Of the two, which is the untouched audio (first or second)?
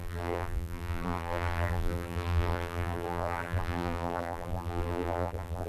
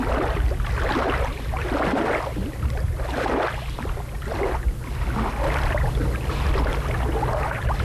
second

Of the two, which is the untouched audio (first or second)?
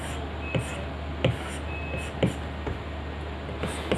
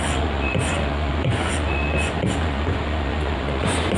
first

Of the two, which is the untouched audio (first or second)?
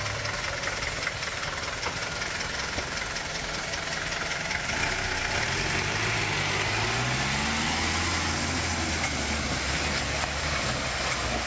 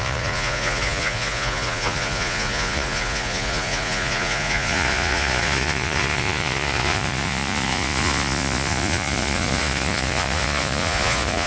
first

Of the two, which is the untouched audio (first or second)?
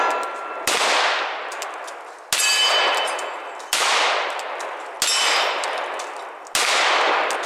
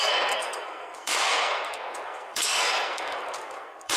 first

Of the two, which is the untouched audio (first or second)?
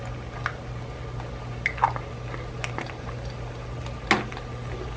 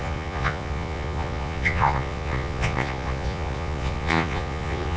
first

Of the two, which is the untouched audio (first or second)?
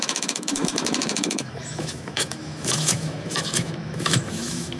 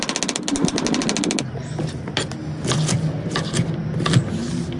second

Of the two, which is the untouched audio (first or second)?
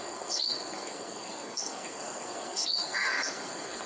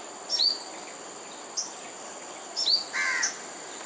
second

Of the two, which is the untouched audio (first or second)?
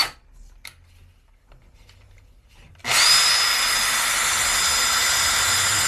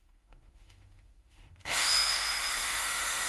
first